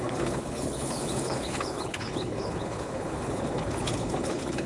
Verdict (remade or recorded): remade